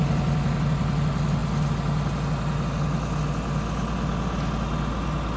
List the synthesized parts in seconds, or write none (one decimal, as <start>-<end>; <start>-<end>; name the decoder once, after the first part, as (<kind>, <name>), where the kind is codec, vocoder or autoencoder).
none